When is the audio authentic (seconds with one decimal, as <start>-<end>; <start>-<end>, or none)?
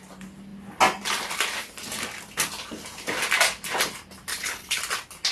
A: 0.0-4.3; 4.8-5.3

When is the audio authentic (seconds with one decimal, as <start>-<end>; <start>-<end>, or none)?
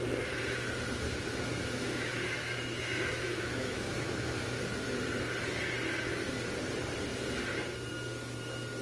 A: 0.0-1.6; 4.6-8.8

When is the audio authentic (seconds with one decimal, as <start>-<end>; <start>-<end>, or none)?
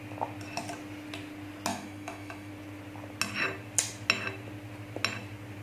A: 0.0-1.7; 2.5-5.6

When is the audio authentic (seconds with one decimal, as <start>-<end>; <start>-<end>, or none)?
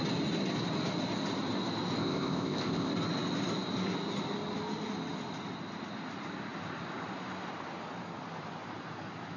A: 0.0-2.0; 2.9-9.4